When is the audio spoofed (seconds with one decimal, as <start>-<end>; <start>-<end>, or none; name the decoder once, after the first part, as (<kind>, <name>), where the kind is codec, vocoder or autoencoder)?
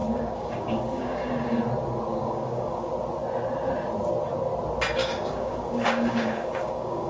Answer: 0.0-1.6 (codec, DAC); 2.1-2.9; 5.0-7.1